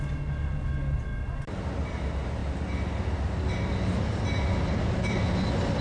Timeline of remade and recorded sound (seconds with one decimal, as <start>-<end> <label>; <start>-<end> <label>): 0.0-5.8 recorded

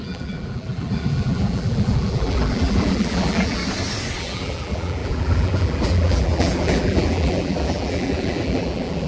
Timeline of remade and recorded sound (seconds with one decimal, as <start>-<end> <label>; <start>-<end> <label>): 0.0-3.6 remade; 3.6-4.2 recorded; 4.2-9.1 remade

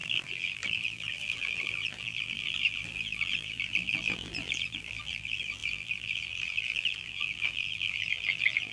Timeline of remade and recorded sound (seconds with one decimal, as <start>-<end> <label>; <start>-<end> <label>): 0.0-8.7 remade

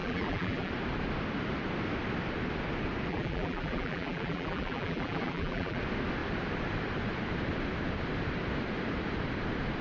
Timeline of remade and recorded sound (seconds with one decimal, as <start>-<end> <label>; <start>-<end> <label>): 0.0-0.7 remade; 0.7-3.1 recorded; 3.1-5.8 remade; 5.8-9.8 recorded